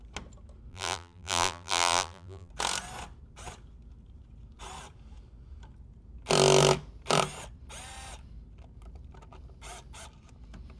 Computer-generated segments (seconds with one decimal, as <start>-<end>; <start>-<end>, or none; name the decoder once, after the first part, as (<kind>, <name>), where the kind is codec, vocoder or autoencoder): 0.7-2.5 (vocoder, BigVGAN v2)